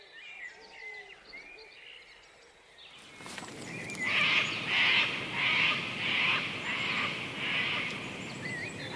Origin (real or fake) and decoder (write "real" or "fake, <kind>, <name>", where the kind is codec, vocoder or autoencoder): real